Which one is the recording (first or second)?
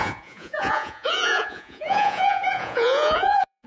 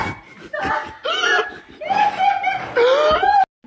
second